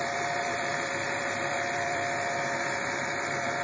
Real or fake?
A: fake